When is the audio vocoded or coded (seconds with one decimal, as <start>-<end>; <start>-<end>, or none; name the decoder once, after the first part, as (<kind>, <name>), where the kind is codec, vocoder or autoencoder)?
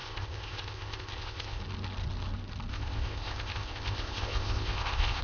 0.0-1.6 (codec, ZipCodec); 2.7-5.2